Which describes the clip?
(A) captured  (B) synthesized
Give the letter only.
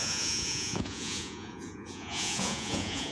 B